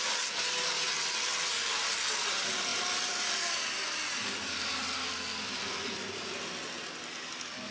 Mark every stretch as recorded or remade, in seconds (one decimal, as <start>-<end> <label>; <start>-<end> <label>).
0.0-7.7 recorded